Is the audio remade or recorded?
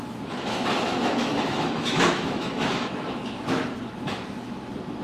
remade